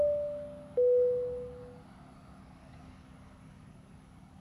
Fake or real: fake